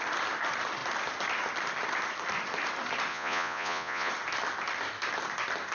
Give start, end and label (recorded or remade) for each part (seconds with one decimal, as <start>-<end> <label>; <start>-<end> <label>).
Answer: 0.0-3.1 recorded; 3.1-4.1 remade; 4.1-5.7 recorded